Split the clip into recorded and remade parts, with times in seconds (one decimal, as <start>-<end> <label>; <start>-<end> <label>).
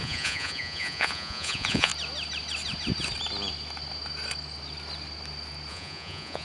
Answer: 0.0-1.9 remade; 1.9-5.7 recorded; 5.7-6.4 remade